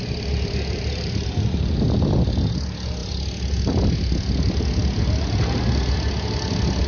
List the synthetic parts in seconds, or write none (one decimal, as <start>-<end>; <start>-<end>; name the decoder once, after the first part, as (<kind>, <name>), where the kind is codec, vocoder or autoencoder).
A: none